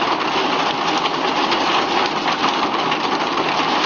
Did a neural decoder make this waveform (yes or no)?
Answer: no